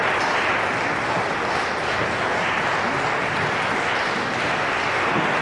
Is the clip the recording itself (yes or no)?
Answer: yes